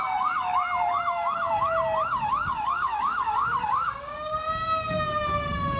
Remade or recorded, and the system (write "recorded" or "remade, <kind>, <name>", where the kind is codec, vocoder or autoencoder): remade, codec, DAC